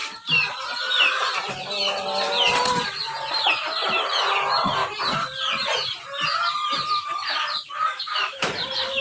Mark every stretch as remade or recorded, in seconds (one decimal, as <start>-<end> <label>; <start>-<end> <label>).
0.0-0.5 recorded; 0.5-1.6 remade; 1.6-2.8 recorded; 2.8-9.0 remade